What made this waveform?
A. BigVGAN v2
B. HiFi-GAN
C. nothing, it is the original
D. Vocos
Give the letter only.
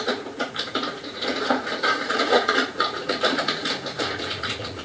D